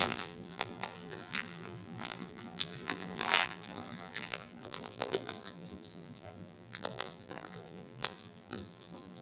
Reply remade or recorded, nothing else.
remade